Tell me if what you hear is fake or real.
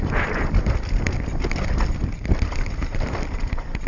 fake